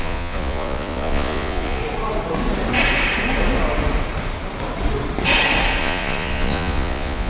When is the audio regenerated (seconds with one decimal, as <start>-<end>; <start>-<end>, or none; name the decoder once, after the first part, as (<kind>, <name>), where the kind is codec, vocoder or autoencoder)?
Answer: 0.0-1.8 (vocoder, Vocos); 5.8-7.3